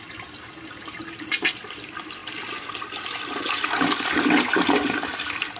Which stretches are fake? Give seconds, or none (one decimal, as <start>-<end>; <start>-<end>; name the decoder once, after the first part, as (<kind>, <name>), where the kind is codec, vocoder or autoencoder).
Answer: none